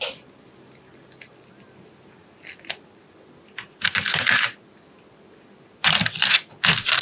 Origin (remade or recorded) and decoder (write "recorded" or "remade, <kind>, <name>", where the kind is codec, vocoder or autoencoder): recorded